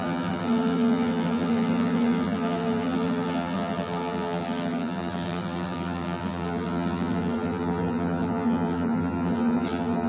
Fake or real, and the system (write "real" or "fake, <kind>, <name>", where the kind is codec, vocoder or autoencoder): fake, vocoder, BigVGAN v2